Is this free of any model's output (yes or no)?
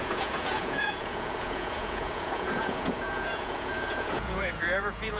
no